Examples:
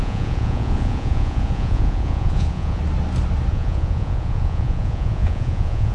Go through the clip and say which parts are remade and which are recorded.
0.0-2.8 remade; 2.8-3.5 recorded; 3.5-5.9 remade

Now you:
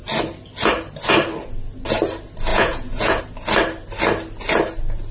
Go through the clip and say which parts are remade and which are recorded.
0.0-2.5 recorded; 2.5-3.2 remade; 3.2-5.1 recorded